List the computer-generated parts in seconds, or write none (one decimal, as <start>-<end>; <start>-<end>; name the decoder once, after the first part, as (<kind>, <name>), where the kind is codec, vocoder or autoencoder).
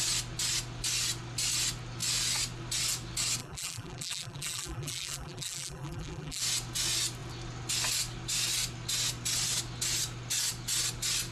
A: 3.4-6.4 (vocoder, BigVGAN v2)